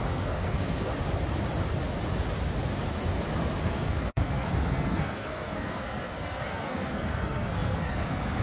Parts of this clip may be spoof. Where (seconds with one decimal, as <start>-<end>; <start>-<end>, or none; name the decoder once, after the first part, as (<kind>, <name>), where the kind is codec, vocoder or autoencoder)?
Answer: 0.0-0.9 (codec, SNAC); 3.6-8.4